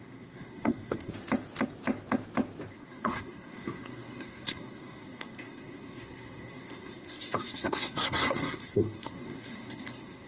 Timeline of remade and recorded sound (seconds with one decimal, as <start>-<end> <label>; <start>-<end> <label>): 0.0-1.1 remade; 1.1-2.7 recorded; 2.7-10.3 remade

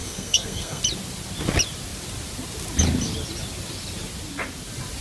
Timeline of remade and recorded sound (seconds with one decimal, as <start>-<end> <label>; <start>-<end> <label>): 0.0-0.8 remade; 0.8-5.0 recorded

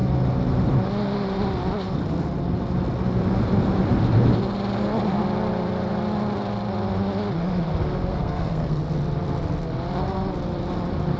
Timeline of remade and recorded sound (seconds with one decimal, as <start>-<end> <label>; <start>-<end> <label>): 0.0-8.1 recorded; 8.1-8.8 remade; 8.8-11.2 recorded

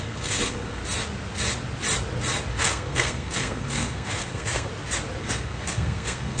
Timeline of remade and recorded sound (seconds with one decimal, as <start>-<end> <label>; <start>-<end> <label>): 0.0-0.8 remade; 0.8-2.5 recorded; 2.5-4.7 remade; 4.7-5.2 recorded; 5.2-6.4 remade

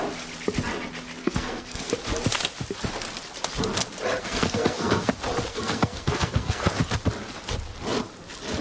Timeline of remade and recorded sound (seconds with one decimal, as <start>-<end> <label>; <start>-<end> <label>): 0.0-1.2 recorded; 1.2-1.9 remade; 1.9-4.2 recorded; 4.2-5.1 remade; 5.1-5.5 recorded; 5.5-6.7 remade; 6.7-8.6 recorded

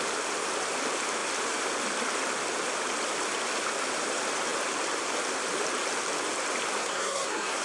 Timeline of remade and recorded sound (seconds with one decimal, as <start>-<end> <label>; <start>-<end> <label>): 0.0-6.8 recorded; 6.8-7.6 remade

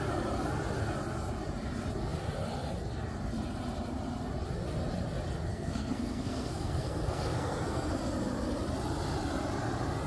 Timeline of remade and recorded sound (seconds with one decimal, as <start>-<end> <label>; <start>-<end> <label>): 0.0-5.5 recorded; 5.5-8.0 remade; 8.0-10.1 recorded

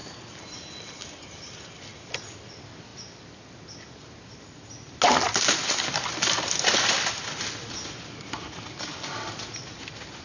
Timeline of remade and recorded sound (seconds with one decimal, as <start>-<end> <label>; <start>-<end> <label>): 0.0-10.2 recorded